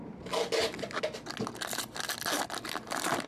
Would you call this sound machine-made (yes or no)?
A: no